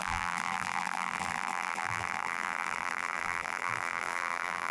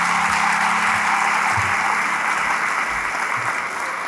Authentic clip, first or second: second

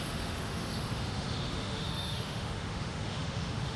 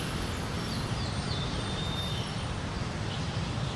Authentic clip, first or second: second